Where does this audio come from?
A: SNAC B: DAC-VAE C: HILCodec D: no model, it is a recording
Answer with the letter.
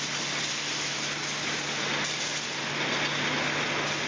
D